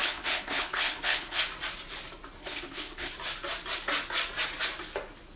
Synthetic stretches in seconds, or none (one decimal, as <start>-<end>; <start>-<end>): 0.0-1.4; 2.4-3.1